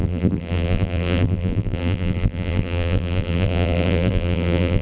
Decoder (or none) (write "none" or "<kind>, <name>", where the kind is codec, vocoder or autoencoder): vocoder, BigVGAN v2